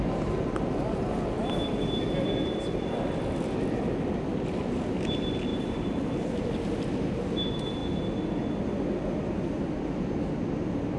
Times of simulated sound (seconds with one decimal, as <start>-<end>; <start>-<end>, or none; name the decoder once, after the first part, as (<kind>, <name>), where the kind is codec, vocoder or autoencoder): 5.5-6.5 (vocoder, BigVGAN v2)